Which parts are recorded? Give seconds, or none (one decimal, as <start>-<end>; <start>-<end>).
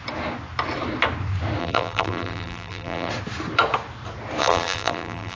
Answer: 0.0-1.6; 3.1-4.4